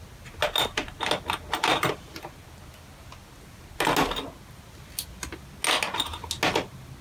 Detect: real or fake real